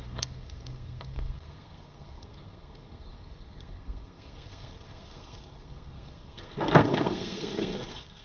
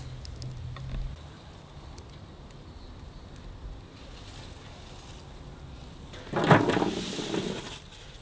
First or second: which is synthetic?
first